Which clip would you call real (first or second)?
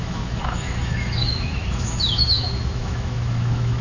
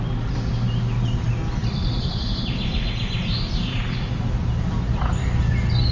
second